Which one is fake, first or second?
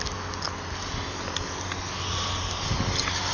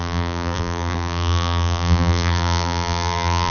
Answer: second